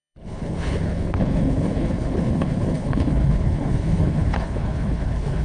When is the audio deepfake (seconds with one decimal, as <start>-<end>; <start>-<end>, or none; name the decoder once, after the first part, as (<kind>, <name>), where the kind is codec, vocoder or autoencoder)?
0.0-5.4 (codec, HILCodec)